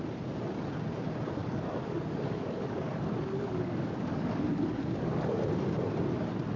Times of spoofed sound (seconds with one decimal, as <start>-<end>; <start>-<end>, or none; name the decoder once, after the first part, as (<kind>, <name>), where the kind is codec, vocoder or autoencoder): 1.4-5.4 (codec, DAC)